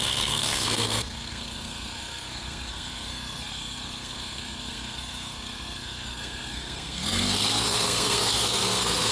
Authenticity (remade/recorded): remade